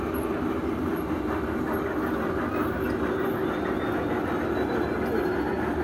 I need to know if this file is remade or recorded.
recorded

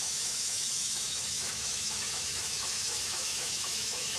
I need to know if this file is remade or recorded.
remade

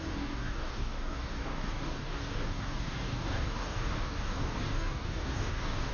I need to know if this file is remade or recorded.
remade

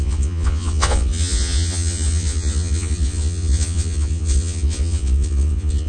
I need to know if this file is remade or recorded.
remade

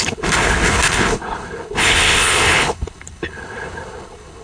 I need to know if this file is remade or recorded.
remade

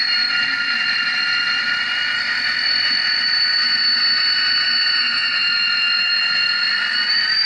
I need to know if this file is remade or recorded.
recorded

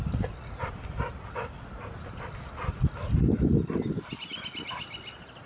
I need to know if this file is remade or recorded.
recorded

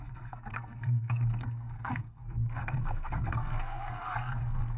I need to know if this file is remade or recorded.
remade